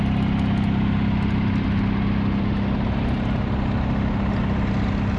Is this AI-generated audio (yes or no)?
no